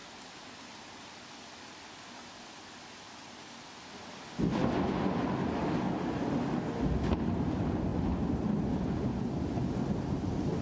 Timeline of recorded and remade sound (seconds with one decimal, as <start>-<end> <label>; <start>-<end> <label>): 0.0-10.6 recorded